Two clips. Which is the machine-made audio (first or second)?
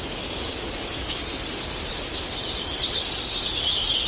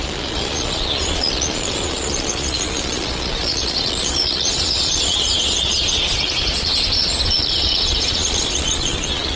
second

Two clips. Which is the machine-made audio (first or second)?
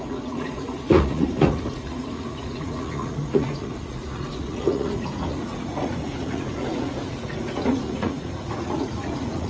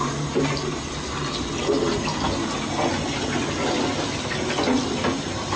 first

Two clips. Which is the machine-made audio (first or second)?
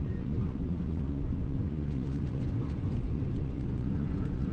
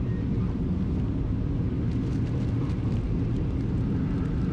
first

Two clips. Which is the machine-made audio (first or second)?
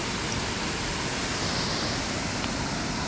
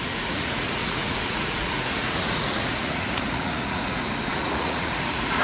second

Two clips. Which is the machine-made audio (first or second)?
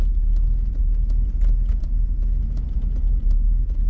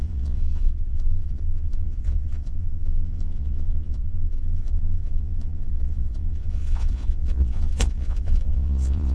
second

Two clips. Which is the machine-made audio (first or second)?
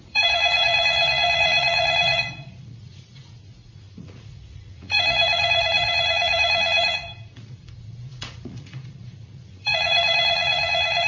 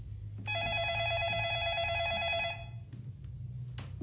first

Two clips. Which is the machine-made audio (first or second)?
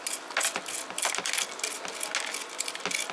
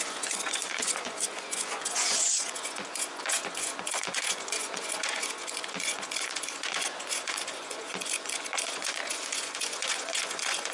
second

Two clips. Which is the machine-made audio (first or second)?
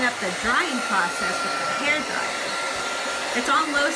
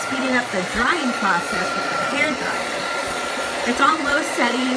second